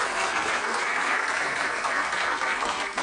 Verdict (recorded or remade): remade